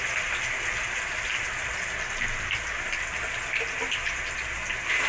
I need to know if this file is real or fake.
real